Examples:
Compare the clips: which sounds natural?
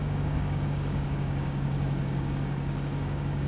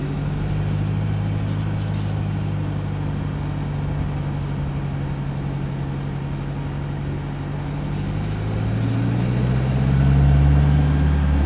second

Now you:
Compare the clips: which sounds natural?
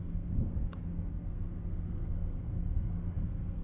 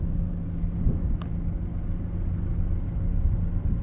second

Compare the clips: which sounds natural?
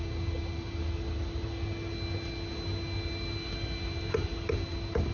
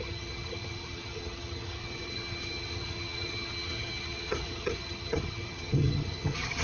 first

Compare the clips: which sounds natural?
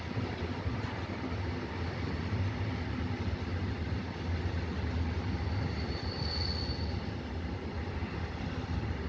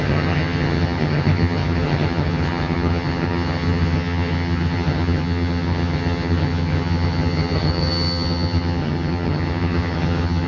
first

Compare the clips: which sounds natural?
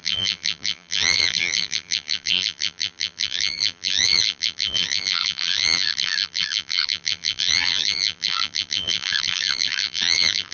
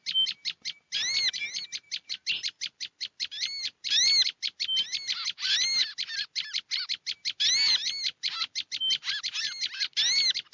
second